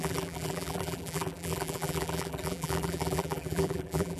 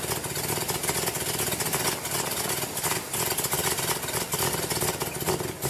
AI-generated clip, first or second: first